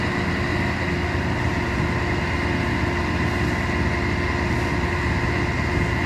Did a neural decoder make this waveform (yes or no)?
no